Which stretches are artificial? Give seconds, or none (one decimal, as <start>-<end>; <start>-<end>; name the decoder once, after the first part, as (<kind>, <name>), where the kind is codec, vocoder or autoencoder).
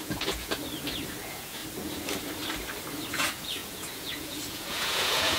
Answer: 0.0-0.6 (vocoder, Vocos); 1.2-1.6; 3.1-5.4